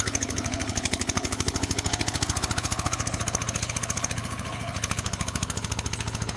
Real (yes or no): no